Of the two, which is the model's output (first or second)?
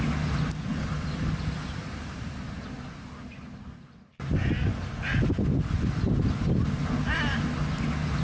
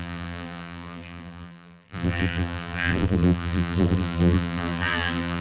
second